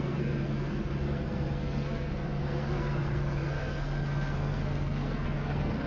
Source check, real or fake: fake